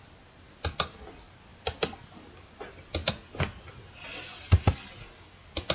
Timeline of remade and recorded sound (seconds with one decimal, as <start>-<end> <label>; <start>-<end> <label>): 0.0-5.7 recorded